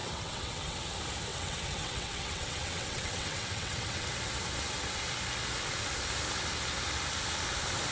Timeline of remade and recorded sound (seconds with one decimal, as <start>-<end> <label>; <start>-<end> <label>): 0.0-0.8 remade; 0.8-1.3 recorded; 1.3-4.1 remade; 4.1-7.9 recorded

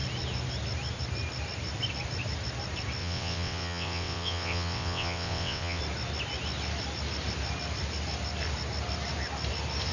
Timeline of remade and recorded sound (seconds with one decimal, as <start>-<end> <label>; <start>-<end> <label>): 0.0-3.0 recorded; 3.0-5.8 remade; 5.8-9.9 recorded

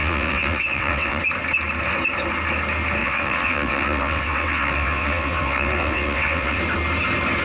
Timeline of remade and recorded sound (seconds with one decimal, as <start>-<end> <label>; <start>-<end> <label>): 0.0-1.2 remade; 1.2-3.0 recorded; 3.0-6.6 remade; 6.6-7.4 recorded

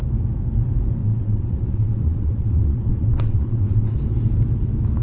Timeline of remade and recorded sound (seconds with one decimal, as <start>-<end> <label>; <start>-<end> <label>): 0.0-1.0 recorded; 1.0-4.0 remade; 4.0-5.0 recorded

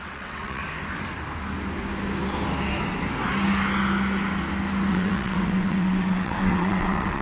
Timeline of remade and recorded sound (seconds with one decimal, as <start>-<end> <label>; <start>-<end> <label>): 0.0-0.6 remade; 0.6-4.9 recorded; 4.9-7.2 remade

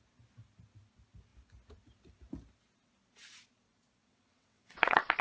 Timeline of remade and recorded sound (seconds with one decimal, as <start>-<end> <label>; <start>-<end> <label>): 0.0-4.0 recorded; 4.0-5.2 remade

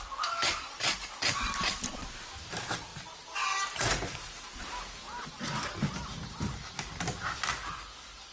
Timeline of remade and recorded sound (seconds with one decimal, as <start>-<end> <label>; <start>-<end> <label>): 0.0-8.3 recorded

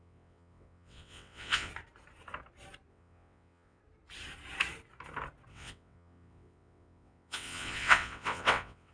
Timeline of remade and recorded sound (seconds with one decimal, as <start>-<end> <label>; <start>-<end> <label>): 0.0-1.7 remade; 1.7-2.9 recorded; 2.9-3.8 remade; 3.8-5.5 recorded; 5.5-8.9 remade